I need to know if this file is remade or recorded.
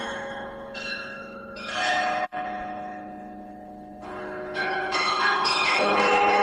remade